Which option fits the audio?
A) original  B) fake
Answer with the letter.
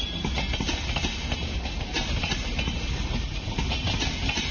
A